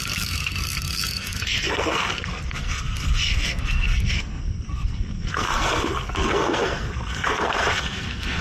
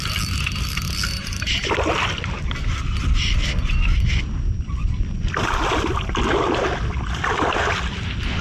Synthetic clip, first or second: first